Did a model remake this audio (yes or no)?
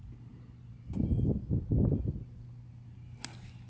no